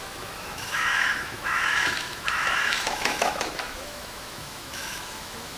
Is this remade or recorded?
remade